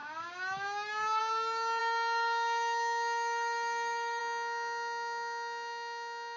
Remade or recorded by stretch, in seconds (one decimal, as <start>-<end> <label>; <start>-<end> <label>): 0.0-1.2 remade; 1.2-1.8 recorded; 1.8-4.2 remade; 4.2-6.4 recorded